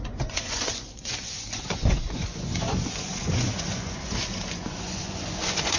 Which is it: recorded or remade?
remade